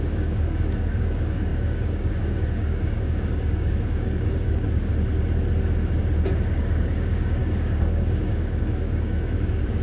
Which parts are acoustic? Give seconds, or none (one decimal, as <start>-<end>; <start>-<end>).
4.9-6.6